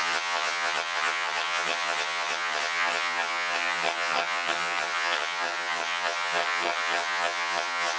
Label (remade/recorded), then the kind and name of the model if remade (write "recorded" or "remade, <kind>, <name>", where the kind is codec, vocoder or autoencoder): remade, vocoder, HiFi-GAN